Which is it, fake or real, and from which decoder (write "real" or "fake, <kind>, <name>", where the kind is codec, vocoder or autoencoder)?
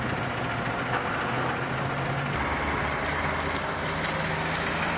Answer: real